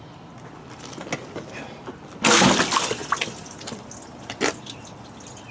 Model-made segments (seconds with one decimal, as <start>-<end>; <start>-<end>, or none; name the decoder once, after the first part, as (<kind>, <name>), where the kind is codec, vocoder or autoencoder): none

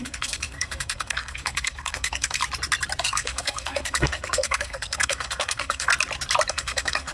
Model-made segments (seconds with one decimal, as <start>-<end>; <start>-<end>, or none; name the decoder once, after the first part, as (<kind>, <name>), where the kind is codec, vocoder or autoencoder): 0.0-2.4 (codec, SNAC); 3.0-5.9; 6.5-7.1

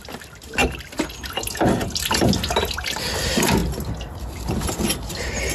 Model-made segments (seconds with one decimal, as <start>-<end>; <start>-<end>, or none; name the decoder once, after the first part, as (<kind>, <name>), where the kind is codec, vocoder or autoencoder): none

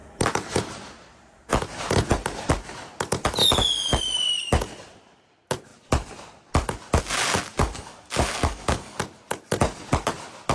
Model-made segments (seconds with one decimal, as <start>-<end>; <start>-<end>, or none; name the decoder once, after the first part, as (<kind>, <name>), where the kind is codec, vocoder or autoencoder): 7.6-9.0 (codec, DAC)

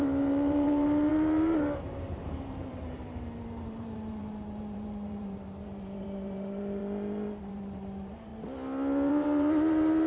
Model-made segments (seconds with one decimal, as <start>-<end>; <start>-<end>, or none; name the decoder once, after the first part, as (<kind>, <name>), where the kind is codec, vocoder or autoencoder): 0.0-6.8 (vocoder, BigVGAN v2); 7.5-8.3; 9.1-10.1